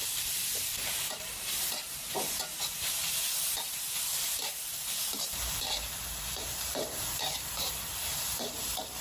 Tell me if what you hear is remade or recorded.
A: remade